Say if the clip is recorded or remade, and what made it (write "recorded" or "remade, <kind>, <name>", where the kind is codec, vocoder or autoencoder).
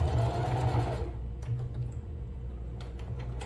remade, vocoder, Vocos